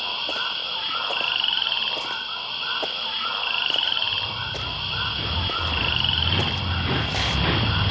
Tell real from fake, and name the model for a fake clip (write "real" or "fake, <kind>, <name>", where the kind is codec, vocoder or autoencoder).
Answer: real